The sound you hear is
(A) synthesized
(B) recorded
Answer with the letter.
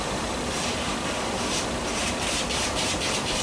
A